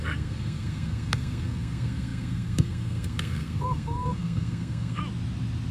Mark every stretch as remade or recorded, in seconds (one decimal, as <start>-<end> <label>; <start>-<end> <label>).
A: 0.0-5.0 remade; 5.0-5.7 recorded